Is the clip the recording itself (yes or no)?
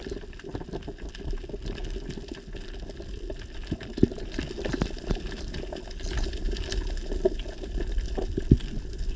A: yes